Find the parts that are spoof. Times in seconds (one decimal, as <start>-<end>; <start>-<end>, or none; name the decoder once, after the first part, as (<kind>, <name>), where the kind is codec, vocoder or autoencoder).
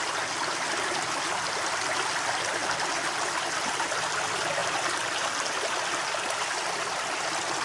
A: none